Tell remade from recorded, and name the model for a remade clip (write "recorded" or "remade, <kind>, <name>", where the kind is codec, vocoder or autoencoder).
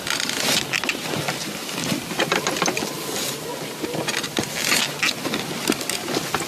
recorded